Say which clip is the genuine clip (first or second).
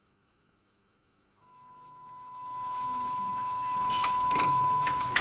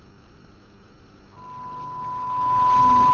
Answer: second